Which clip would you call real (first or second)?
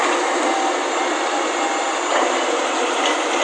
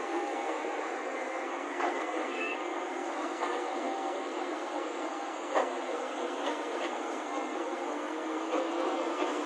first